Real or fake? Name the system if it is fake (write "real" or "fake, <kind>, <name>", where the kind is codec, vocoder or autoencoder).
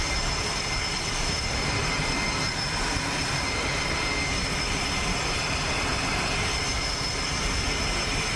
real